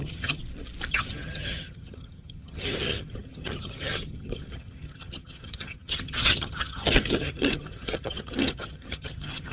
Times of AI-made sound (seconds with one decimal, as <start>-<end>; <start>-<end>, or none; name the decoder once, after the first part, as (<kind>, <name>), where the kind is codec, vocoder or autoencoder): 0.0-0.4 (vocoder, HiFi-GAN); 0.9-9.5